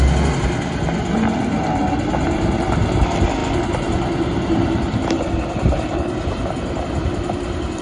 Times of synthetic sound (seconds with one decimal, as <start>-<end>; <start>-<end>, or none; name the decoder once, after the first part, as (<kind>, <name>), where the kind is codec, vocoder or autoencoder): none

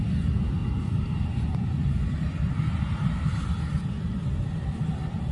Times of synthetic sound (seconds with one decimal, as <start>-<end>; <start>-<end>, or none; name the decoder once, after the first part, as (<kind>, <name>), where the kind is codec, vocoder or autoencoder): none

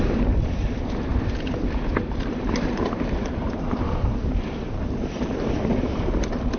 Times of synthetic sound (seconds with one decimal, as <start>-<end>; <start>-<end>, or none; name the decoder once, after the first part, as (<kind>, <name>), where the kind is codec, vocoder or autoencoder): 0.0-1.1 (vocoder, BigVGAN v2); 2.3-6.6

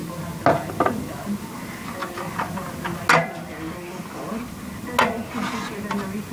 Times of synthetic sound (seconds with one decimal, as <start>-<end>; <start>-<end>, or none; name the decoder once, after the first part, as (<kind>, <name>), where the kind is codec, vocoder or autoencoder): none